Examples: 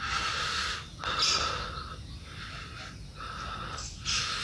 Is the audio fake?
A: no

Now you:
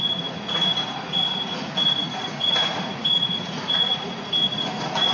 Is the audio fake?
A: yes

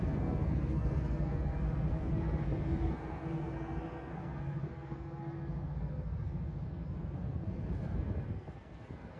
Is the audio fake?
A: yes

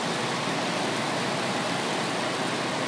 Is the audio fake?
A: no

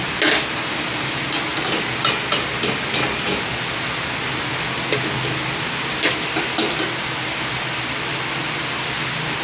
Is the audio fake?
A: no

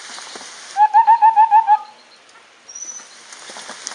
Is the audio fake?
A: no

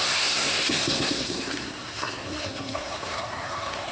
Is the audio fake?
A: yes